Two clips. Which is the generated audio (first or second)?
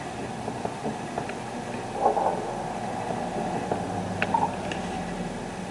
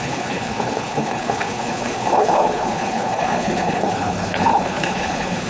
second